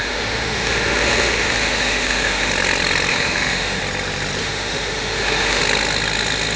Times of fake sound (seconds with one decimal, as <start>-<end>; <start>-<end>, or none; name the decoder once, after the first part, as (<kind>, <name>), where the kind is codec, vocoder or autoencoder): 0.0-2.5 (autoencoder, DAC-VAE); 3.1-3.8; 4.4-5.6